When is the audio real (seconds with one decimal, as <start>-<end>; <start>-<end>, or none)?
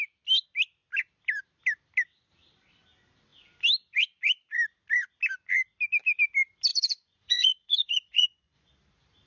0.0-6.7; 8.7-9.3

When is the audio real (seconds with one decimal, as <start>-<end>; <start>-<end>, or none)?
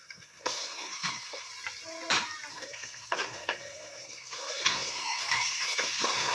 1.5-2.5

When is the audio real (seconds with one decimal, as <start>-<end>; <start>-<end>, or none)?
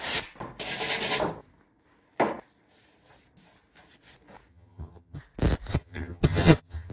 0.0-4.5; 5.2-5.7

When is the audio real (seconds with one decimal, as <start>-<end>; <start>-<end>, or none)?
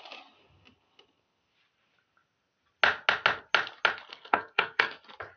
0.0-4.1; 5.0-5.4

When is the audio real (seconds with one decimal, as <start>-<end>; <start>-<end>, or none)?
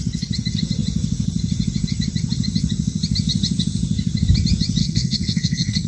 0.0-4.8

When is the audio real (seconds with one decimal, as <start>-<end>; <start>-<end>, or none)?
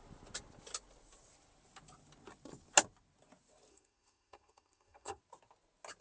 0.0-3.7; 5.2-6.0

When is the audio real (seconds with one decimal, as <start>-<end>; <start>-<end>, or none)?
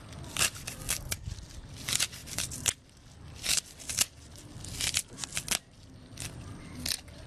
0.0-7.3